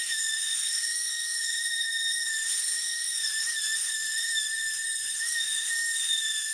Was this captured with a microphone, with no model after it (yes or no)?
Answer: no